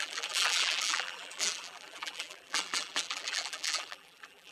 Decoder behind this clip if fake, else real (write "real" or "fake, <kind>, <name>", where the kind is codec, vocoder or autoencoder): fake, vocoder, BigVGAN v2